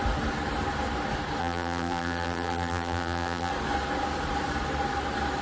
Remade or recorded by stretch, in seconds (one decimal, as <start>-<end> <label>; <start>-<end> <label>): 0.0-1.4 recorded; 1.4-3.5 remade; 3.5-5.4 recorded